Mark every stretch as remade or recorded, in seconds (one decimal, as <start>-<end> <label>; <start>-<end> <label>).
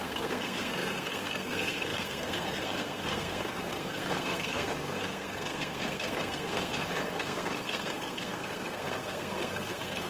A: 0.0-10.1 remade